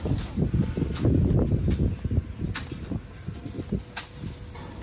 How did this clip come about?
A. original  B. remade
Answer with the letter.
A